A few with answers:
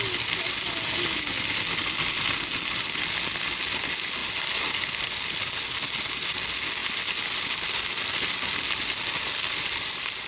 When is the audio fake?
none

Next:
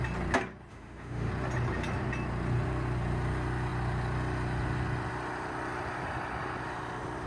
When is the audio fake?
0.7-1.3 (autoencoder, DAC-VAE)

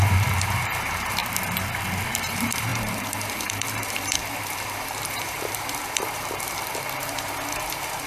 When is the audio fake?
0.0-1.2 (vocoder, BigVGAN v2); 2.2-8.1

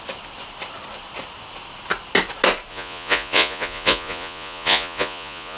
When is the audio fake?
2.7-5.6 (vocoder, Vocos)

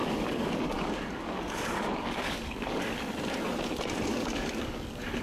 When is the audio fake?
0.0-3.1 (codec, DAC); 4.1-5.2

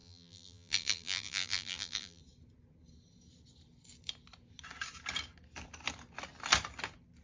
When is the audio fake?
0.0-2.2 (vocoder, BigVGAN v2)

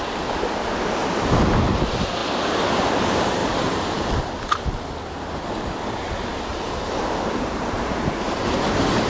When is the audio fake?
3.4-4.2 (vocoder, BigVGAN v2); 6.5-8.1